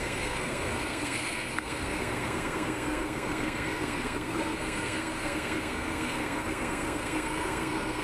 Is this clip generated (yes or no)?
yes